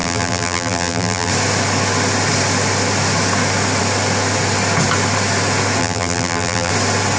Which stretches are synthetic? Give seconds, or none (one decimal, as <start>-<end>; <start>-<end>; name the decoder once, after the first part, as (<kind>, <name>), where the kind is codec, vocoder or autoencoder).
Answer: 0.0-1.3 (vocoder, BigVGAN v2); 5.8-6.7